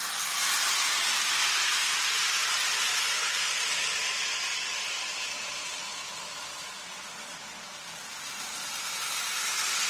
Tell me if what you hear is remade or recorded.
recorded